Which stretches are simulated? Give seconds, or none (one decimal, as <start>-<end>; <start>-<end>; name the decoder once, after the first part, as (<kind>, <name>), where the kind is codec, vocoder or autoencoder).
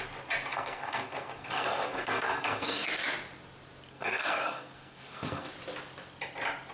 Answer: 0.5-2.9 (codec, SNAC); 3.9-5.5